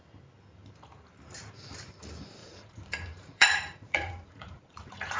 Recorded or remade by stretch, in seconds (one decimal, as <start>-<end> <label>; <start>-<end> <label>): 0.0-2.4 recorded; 2.4-5.2 remade

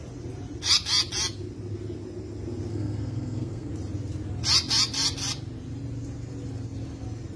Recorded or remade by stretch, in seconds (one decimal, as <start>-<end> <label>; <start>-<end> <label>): 0.0-2.7 recorded; 2.7-3.7 remade; 3.7-7.4 recorded

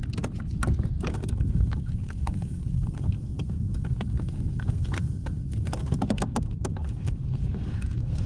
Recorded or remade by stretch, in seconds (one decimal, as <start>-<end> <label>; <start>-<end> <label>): 0.0-1.1 recorded; 1.1-8.3 remade

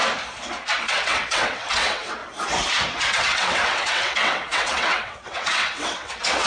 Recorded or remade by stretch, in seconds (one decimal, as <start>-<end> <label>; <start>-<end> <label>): 0.0-0.8 recorded; 0.8-2.2 remade; 2.2-3.0 recorded; 3.0-6.5 remade

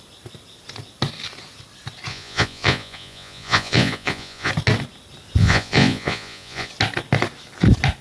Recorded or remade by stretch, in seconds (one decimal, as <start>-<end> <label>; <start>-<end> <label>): 0.0-2.1 recorded; 2.1-4.5 remade; 4.5-5.4 recorded; 5.4-6.7 remade; 6.7-8.0 recorded

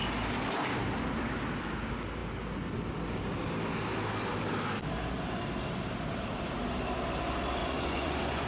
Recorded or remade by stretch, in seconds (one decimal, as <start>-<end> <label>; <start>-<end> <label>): 0.0-7.6 recorded; 7.6-8.5 remade

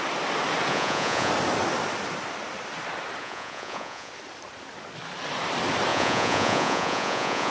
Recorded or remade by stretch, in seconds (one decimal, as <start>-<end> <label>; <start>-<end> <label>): 0.0-0.7 recorded; 0.7-1.3 remade; 1.3-3.2 recorded; 3.2-4.1 remade; 4.1-5.9 recorded; 5.9-7.5 remade